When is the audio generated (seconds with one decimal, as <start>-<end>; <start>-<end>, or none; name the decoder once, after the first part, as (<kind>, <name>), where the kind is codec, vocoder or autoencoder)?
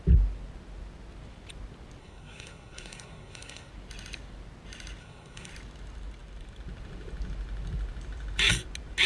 2.0-3.7 (codec, SNAC); 5.0-5.5